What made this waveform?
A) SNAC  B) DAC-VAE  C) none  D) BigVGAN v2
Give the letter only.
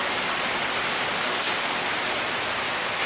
C